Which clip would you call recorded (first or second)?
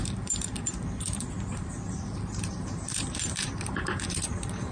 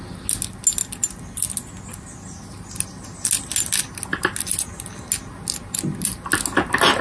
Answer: second